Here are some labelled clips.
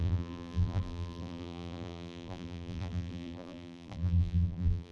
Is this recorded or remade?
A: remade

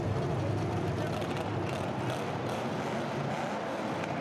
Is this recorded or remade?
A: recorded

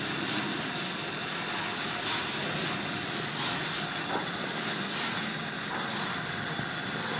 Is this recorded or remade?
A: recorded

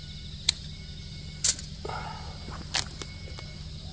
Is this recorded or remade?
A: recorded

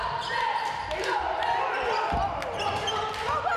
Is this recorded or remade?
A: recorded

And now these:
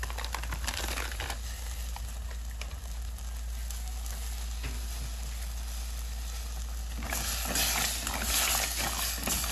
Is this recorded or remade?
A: recorded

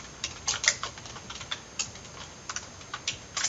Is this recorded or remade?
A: remade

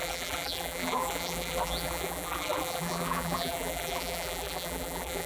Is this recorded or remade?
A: remade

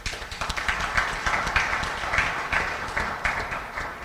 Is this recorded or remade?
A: recorded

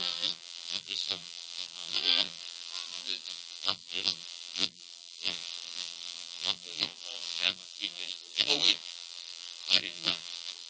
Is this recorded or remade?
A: remade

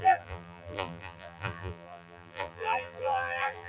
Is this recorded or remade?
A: remade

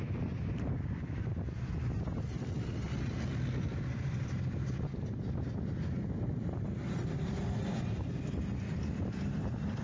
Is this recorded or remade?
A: remade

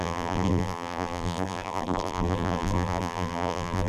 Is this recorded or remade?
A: remade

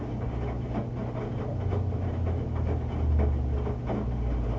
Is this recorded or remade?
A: recorded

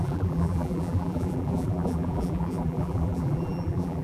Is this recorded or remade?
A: remade